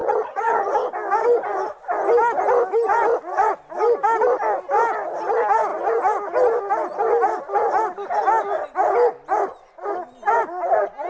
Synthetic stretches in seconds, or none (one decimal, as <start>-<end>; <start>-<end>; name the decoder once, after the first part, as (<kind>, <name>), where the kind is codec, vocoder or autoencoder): 0.0-0.7 (vocoder, HiFi-GAN)